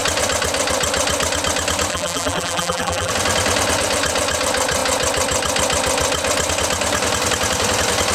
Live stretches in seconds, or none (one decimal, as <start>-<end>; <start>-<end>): 0.0-1.9; 3.1-8.1